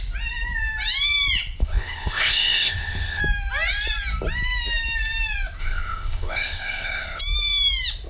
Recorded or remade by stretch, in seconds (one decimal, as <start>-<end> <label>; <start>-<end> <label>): 0.0-1.6 recorded; 1.6-3.2 remade; 3.2-5.6 recorded; 5.6-7.2 remade; 7.2-8.1 recorded